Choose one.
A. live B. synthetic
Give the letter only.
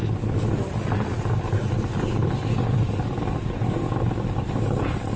A